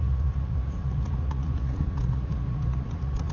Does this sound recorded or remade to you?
remade